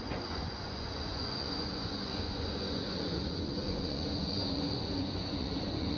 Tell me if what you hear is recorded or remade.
remade